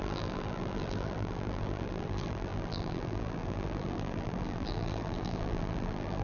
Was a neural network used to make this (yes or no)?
yes